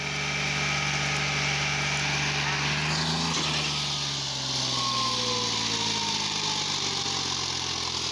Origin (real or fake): real